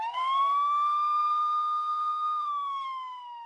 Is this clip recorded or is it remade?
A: remade